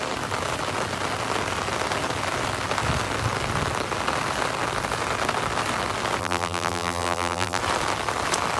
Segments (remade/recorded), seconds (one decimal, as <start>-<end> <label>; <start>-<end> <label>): 0.0-6.2 recorded; 6.2-7.6 remade; 7.6-8.6 recorded